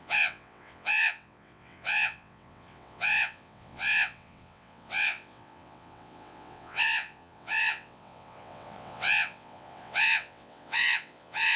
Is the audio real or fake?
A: fake